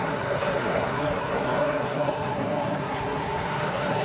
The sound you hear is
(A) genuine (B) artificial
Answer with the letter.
B